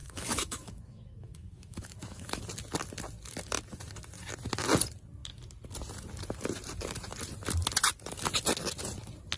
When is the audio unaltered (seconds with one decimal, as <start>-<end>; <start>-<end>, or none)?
2.4-9.4

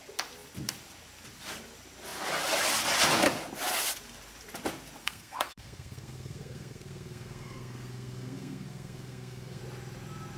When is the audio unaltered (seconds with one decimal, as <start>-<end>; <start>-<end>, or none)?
0.0-5.0; 9.6-10.4

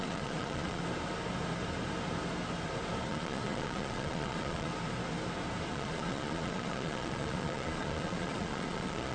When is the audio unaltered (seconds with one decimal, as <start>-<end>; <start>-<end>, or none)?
0.8-3.1; 4.7-5.7